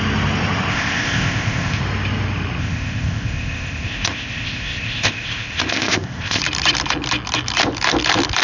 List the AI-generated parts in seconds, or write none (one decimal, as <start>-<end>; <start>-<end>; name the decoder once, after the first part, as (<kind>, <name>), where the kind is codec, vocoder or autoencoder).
0.7-1.8 (codec, ZipCodec); 2.6-6.4